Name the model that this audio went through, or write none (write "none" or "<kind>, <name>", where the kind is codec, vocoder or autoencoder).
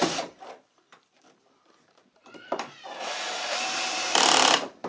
vocoder, BigVGAN v2